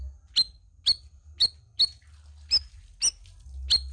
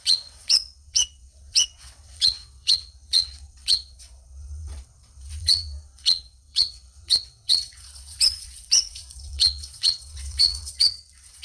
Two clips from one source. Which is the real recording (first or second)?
first